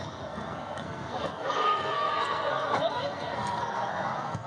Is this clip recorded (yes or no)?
no